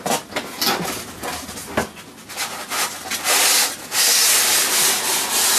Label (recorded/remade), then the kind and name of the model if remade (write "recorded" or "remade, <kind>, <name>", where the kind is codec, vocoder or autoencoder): recorded